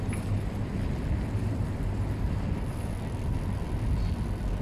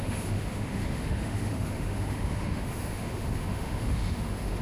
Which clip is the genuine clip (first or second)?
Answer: first